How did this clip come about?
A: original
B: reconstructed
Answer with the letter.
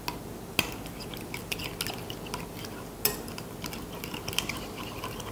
A